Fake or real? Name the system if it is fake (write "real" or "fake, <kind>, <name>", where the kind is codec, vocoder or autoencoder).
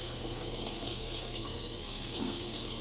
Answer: fake, codec, SNAC